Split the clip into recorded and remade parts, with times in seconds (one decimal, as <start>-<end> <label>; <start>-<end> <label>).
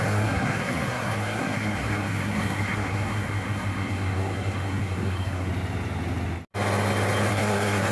0.0-5.5 remade; 5.5-7.3 recorded; 7.3-7.9 remade